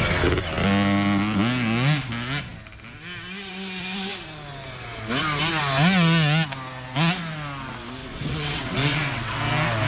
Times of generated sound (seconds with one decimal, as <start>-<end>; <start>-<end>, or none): 8.0-9.3